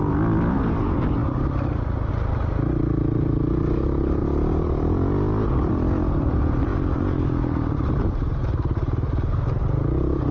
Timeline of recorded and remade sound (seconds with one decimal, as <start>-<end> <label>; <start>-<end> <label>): 0.0-10.3 recorded